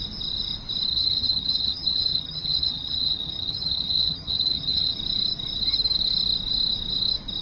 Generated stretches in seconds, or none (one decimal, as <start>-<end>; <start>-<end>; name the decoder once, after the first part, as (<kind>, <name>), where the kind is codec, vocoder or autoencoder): 0.9-5.0 (vocoder, HiFi-GAN)